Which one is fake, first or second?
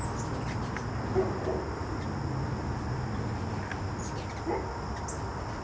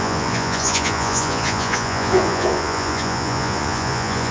second